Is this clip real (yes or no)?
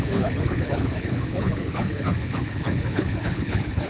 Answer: no